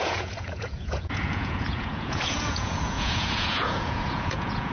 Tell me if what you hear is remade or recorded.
remade